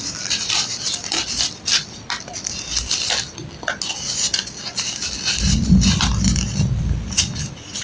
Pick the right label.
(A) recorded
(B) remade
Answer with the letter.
A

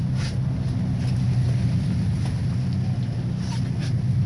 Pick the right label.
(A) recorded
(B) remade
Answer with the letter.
A